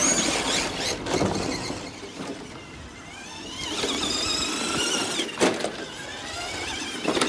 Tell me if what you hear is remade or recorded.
recorded